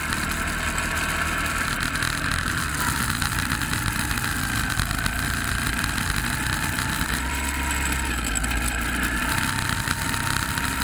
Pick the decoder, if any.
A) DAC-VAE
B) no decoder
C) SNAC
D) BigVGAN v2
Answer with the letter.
B